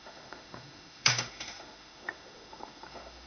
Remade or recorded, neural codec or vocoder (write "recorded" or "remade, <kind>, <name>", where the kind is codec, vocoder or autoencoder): remade, autoencoder, DAC-VAE